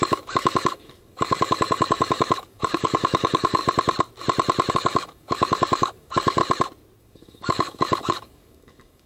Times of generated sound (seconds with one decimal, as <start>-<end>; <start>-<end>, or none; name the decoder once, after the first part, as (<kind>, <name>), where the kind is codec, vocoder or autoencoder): 0.0-3.6 (codec, DAC); 4.7-6.4; 7.0-9.1

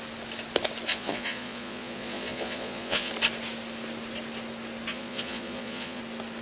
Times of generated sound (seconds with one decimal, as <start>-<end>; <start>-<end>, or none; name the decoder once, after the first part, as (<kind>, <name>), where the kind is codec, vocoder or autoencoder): 0.9-3.1 (vocoder, Vocos); 4.9-6.0

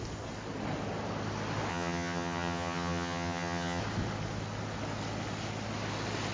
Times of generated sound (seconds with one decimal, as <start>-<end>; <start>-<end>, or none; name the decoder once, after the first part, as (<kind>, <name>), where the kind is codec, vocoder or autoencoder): 1.7-3.8 (vocoder, HiFi-GAN)

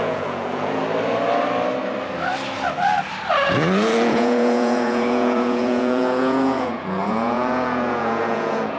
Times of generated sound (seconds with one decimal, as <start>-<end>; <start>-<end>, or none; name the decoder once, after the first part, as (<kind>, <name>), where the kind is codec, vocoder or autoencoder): 0.0-0.8 (vocoder, Vocos); 4.1-8.8